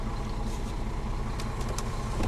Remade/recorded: recorded